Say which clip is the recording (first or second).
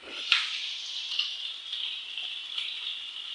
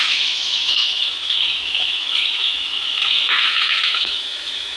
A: first